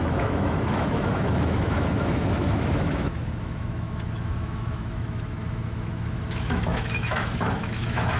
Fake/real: fake